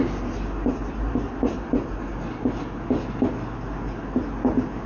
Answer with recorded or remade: recorded